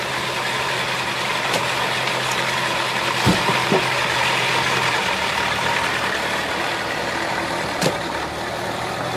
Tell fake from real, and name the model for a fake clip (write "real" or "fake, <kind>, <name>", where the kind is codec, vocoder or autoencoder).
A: fake, vocoder, BigVGAN v2